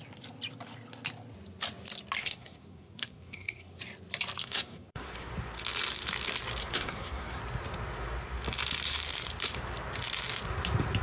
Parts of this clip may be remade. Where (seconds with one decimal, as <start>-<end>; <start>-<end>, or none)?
2.2-3.8; 4.4-5.3; 6.6-7.4